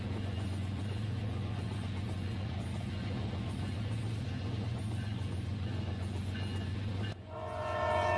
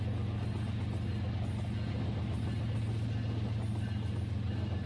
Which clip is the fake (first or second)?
first